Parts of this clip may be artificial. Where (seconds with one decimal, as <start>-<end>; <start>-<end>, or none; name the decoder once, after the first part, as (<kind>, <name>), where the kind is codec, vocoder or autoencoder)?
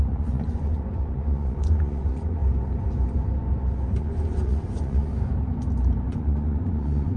0.0-2.4 (vocoder, Vocos); 4.0-5.1; 6.1-7.2